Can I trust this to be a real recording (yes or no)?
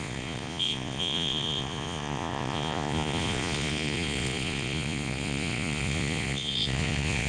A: no